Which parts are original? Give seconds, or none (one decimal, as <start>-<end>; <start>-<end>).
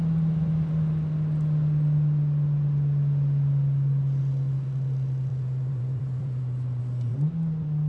0.0-5.3; 6.8-7.9